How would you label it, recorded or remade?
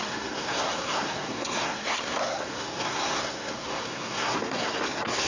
remade